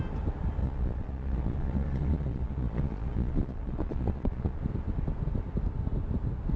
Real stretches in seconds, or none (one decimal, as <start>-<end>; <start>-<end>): 0.0-0.6; 4.6-6.6